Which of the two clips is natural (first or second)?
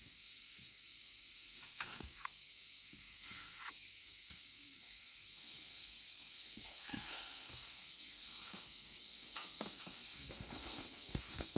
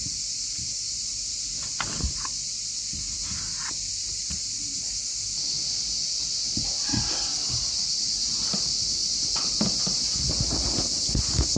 second